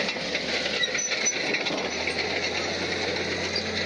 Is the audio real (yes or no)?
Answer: yes